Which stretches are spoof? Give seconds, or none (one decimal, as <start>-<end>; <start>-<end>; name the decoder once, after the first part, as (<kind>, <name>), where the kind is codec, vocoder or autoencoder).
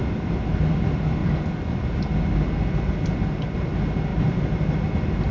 4.1-4.6 (vocoder, BigVGAN v2)